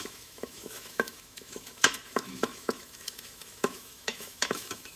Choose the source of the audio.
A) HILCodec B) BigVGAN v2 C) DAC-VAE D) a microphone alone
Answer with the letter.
C